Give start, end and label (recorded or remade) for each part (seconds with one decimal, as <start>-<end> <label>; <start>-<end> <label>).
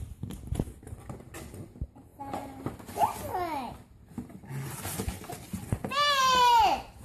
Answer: 0.0-7.0 recorded